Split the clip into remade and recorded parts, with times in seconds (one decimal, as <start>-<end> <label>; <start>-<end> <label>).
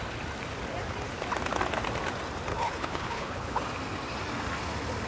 0.0-2.5 recorded; 2.5-3.6 remade; 3.6-5.1 recorded